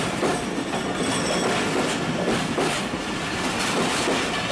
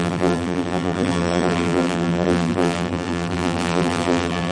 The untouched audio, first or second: first